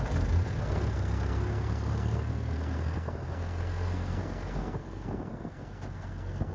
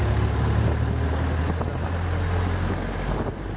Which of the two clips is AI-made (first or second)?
first